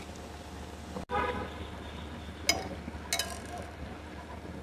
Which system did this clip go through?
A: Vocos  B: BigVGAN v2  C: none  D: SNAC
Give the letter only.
C